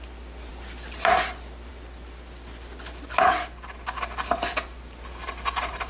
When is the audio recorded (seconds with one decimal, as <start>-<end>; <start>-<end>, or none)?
0.0-5.9